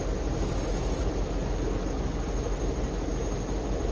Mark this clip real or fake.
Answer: real